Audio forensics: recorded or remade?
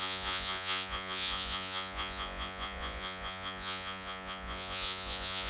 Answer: remade